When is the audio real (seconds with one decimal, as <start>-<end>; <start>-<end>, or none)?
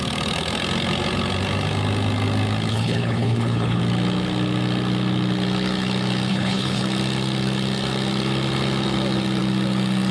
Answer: 0.0-2.7; 3.8-6.3; 6.8-10.1